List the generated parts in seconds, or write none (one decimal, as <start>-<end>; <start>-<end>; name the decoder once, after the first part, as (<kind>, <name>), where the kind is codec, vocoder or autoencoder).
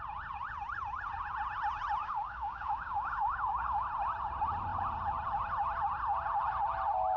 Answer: 2.0-3.9 (codec, DAC)